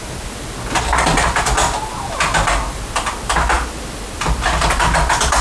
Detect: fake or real real